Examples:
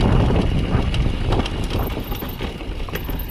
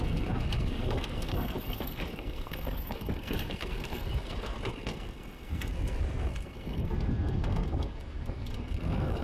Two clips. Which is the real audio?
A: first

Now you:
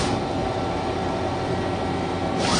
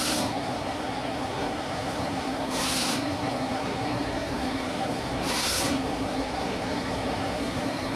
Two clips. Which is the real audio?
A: first